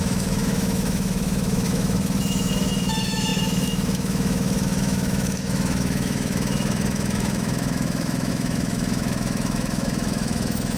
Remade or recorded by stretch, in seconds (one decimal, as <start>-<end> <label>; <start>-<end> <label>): 0.0-10.8 remade